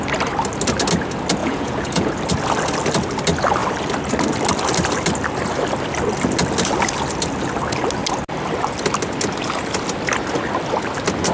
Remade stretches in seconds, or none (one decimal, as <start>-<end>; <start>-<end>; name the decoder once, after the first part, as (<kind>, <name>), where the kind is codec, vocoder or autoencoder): 1.4-2.1 (vocoder, Vocos)